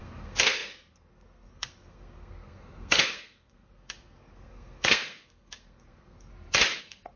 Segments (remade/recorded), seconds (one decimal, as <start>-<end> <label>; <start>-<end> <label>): 0.0-6.3 remade; 6.3-6.8 recorded; 6.8-7.2 remade